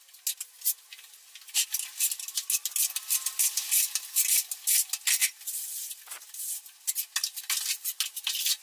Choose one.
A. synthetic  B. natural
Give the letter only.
B